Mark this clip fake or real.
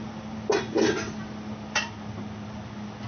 real